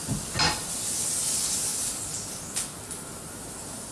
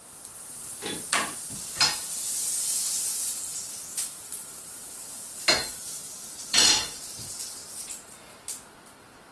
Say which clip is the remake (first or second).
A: second